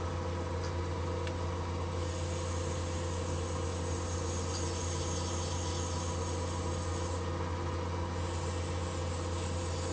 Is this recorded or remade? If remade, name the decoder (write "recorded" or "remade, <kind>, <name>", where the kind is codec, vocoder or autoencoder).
recorded